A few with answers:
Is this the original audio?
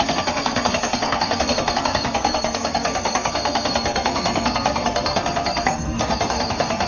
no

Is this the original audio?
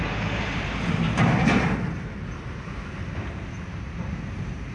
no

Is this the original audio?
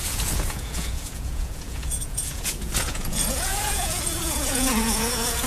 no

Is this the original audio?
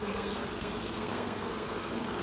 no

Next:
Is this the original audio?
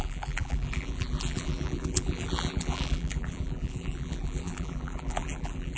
no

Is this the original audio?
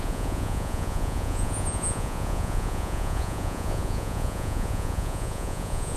no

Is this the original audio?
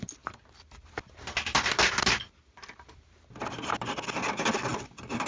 yes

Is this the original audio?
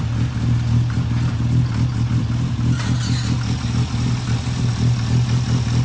yes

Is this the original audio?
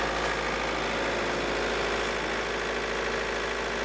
yes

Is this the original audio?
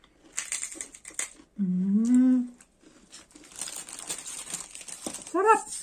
yes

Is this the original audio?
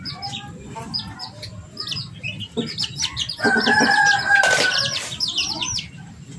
yes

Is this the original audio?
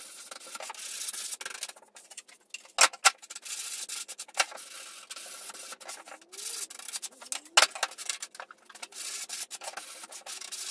yes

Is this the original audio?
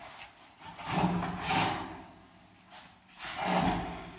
yes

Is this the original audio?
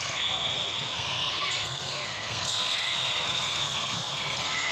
no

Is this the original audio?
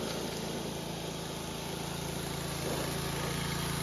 yes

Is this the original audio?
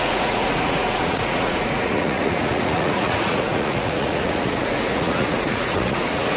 no